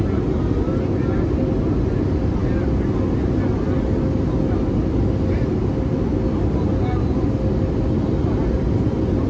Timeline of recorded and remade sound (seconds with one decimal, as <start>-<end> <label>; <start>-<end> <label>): 0.0-9.3 recorded